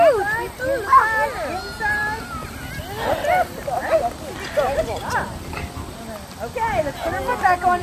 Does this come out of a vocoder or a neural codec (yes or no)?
no